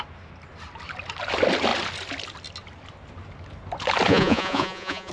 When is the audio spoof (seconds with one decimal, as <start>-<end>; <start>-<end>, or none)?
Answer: 4.1-5.1